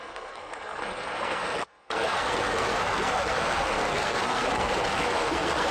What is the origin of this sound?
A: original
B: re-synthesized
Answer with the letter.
B